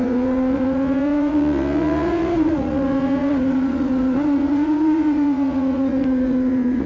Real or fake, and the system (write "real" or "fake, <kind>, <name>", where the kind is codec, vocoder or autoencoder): fake, vocoder, Vocos